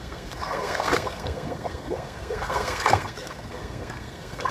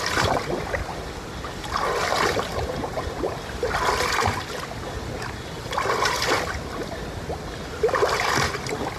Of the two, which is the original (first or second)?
second